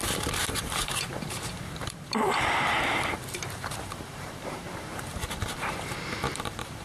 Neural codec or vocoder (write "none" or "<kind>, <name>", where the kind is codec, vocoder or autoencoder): vocoder, BigVGAN v2